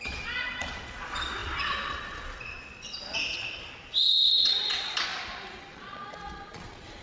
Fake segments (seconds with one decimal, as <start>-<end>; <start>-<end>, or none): 0.0-5.1; 5.6-7.0